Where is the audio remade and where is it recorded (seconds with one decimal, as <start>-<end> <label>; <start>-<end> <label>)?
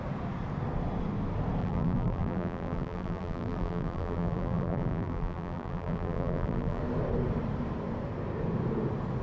0.0-1.6 recorded; 1.6-6.8 remade; 6.8-9.2 recorded